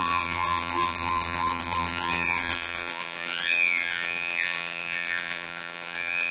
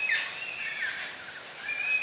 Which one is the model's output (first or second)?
first